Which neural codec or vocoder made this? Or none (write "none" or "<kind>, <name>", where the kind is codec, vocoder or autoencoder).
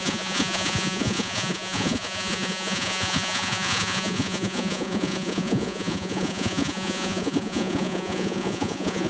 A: vocoder, Vocos